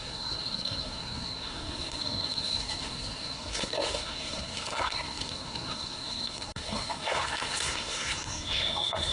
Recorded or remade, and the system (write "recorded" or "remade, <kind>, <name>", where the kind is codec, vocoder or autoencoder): remade, codec, SNAC